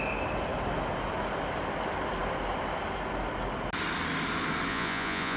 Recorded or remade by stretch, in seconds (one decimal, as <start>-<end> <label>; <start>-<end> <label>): 0.0-4.7 recorded; 4.7-5.4 remade